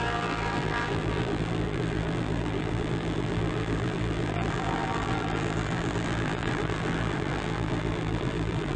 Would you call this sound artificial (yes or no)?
yes